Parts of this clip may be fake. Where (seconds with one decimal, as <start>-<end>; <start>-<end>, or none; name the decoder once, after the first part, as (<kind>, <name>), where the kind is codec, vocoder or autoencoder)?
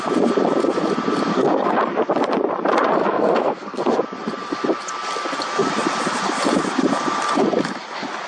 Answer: 1.3-1.8 (codec, SNAC); 3.0-3.8